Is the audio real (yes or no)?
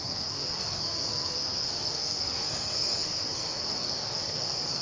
no